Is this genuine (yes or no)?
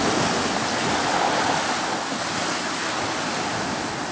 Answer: yes